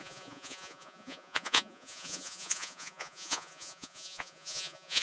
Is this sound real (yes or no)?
no